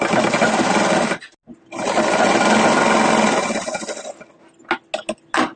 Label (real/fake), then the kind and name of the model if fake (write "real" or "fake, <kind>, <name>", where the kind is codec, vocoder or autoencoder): real